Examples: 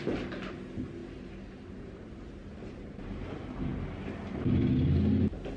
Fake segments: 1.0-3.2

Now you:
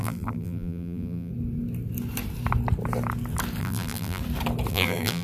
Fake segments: 0.0-1.3; 3.6-4.2; 4.7-5.2